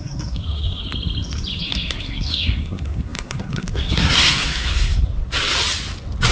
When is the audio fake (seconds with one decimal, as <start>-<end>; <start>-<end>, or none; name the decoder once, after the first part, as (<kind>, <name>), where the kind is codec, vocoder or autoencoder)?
0.0-0.9 (codec, SNAC); 1.6-5.1